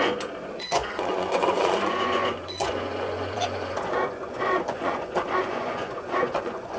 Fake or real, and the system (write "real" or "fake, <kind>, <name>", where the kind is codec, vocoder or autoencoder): fake, vocoder, Vocos